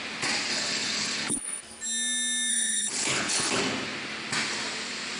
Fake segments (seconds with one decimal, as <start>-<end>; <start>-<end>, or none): 0.5-1.6; 2.5-3.6